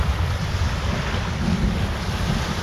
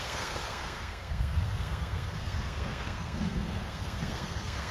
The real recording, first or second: first